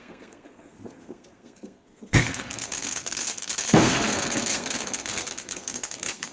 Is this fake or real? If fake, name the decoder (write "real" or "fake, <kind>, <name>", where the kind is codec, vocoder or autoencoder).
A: fake, codec, SNAC